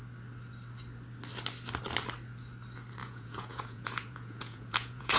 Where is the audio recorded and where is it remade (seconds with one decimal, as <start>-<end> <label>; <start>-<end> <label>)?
0.0-3.0 recorded; 3.0-5.2 remade